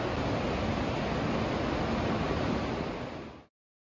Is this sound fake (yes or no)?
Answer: no